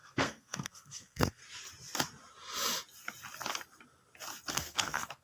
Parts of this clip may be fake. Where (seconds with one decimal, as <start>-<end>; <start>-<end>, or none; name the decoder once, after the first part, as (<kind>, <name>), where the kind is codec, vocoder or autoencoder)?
0.0-1.4 (codec, SNAC); 4.5-5.2